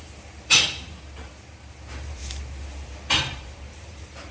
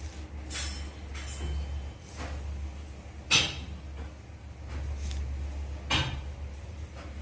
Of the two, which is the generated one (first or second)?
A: first